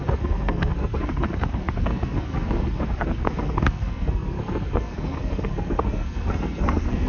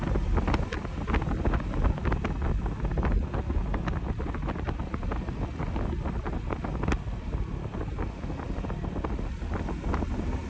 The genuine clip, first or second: second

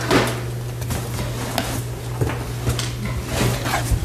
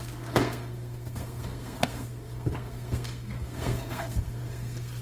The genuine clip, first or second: first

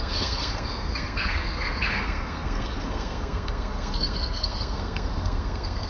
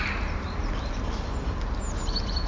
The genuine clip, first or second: second